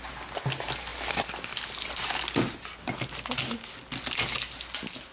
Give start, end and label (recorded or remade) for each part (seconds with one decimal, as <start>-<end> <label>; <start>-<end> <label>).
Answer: 0.0-5.1 recorded

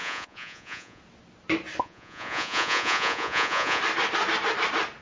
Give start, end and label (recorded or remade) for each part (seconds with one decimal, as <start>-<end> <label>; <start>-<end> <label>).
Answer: 0.0-1.0 remade; 1.0-1.8 recorded; 1.8-3.8 remade; 3.8-5.0 recorded